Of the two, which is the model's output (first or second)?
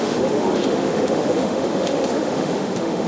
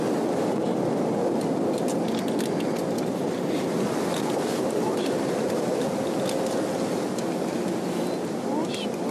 first